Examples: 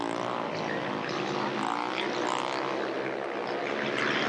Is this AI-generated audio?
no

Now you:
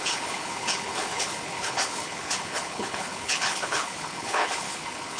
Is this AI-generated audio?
yes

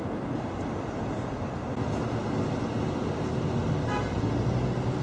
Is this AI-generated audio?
no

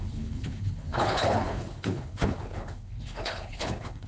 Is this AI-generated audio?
yes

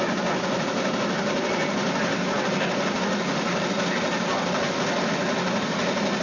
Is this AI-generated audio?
no